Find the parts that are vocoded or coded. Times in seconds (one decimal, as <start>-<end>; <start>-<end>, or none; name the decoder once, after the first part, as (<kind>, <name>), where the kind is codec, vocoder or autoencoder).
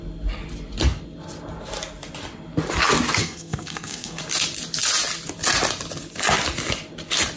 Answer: 3.2-4.2 (codec, SNAC)